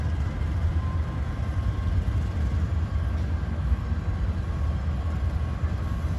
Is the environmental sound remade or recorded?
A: recorded